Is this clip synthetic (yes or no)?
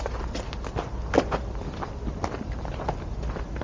no